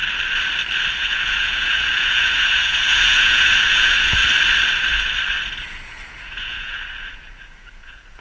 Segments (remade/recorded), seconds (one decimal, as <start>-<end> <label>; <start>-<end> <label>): 0.0-1.0 recorded; 1.0-4.2 remade; 4.2-5.6 recorded; 5.6-8.2 remade